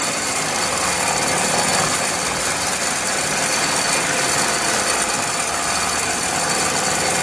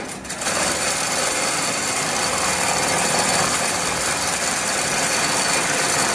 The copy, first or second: second